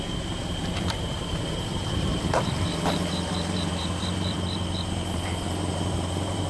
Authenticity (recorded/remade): remade